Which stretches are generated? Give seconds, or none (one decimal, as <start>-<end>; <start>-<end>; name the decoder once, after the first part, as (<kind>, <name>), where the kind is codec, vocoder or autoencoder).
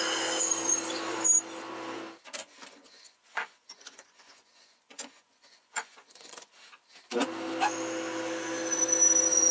2.4-6.5 (vocoder, Vocos)